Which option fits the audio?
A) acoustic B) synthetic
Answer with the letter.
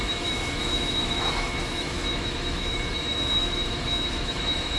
B